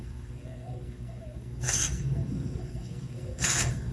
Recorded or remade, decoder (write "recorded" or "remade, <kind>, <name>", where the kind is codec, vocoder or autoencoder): remade, codec, SNAC